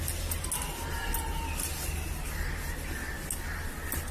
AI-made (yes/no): no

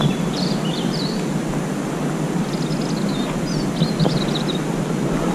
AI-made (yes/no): no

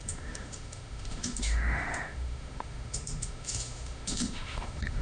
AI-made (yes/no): yes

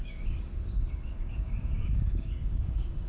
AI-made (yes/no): yes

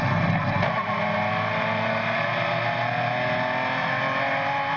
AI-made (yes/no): no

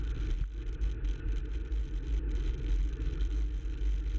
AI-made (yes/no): no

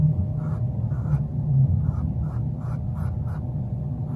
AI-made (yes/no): no